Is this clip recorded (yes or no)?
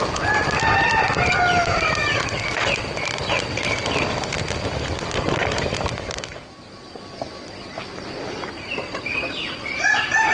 yes